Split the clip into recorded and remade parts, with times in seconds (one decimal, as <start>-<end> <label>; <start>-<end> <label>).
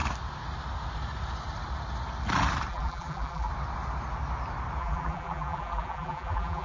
0.0-2.7 recorded; 2.7-3.5 remade; 3.5-4.8 recorded; 4.8-6.6 remade